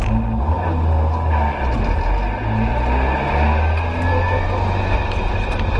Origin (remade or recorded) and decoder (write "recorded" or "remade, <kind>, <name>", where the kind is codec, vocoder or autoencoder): recorded